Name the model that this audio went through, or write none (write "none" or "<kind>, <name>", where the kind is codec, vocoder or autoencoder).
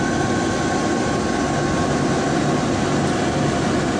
none